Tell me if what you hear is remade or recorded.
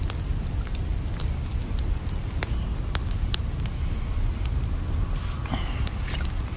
recorded